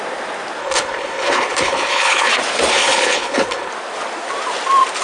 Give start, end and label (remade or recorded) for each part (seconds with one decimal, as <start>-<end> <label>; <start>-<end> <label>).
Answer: 0.0-0.6 recorded; 0.6-2.3 remade; 2.3-2.7 recorded; 2.7-3.7 remade; 3.7-5.0 recorded

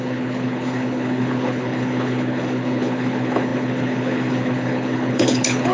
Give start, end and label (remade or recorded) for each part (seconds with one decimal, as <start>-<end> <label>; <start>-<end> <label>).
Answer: 0.0-5.7 remade

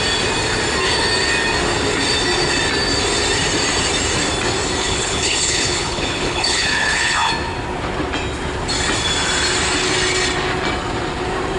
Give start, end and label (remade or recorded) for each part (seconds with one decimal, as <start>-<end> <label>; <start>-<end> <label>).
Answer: 0.0-4.8 recorded; 4.8-7.3 remade; 7.3-11.6 recorded

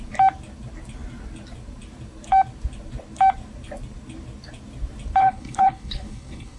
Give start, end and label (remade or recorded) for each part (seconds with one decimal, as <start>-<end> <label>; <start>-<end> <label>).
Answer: 0.0-5.2 recorded; 5.2-6.6 remade

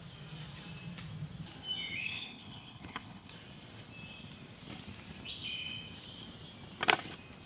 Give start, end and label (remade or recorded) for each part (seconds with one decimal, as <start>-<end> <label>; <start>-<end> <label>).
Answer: 0.0-2.0 recorded; 2.0-3.3 remade; 3.3-7.5 recorded

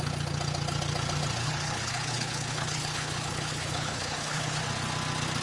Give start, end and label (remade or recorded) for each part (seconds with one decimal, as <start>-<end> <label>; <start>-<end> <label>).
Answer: 0.0-1.4 recorded; 1.4-4.6 remade; 4.6-5.4 recorded

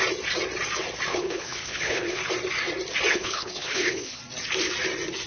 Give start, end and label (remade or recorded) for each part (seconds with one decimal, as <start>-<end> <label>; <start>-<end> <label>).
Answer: 0.0-1.1 recorded; 1.1-2.2 remade; 2.2-3.1 recorded; 3.1-4.2 remade; 4.2-5.3 recorded